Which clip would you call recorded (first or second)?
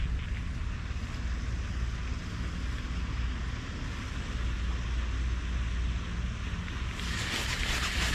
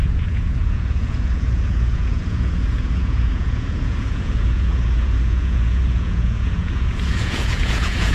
first